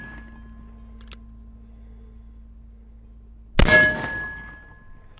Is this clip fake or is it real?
real